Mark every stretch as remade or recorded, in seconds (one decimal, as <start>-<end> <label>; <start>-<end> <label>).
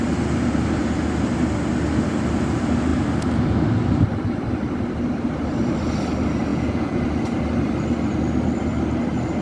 0.0-6.5 recorded; 6.5-7.0 remade; 7.0-9.4 recorded